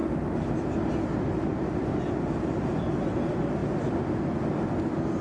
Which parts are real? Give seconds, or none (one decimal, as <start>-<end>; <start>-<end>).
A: 0.0-5.2